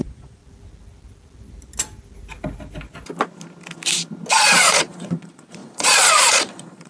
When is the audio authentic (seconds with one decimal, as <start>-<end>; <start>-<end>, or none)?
0.4-4.3